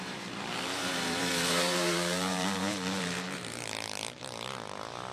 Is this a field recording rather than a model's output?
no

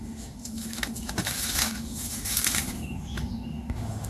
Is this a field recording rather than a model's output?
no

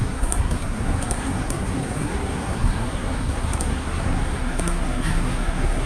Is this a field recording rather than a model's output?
no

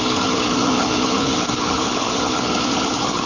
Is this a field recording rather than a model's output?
no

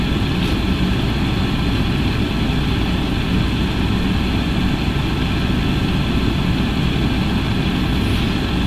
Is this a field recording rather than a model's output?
yes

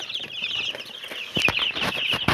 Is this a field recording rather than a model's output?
no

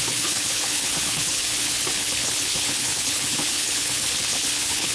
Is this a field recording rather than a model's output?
no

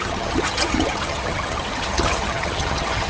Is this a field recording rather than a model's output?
no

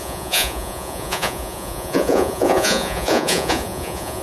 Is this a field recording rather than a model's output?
no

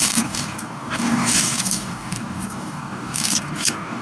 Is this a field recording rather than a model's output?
no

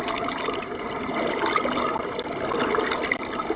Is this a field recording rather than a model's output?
yes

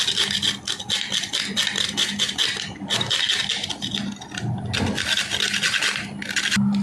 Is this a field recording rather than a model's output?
yes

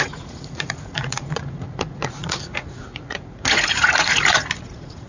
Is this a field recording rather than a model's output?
no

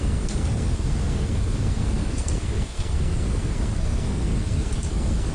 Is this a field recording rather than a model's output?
no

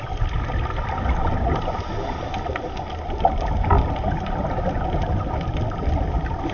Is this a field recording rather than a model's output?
yes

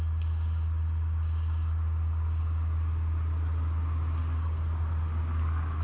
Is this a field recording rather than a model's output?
yes